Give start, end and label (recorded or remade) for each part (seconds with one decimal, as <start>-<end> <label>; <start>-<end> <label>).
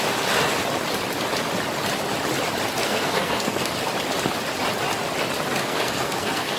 0.0-2.8 recorded; 2.8-3.7 remade; 3.7-5.6 recorded; 5.6-6.6 remade